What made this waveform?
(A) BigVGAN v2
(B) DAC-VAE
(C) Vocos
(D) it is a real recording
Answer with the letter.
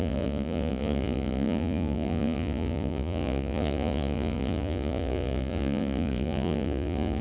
C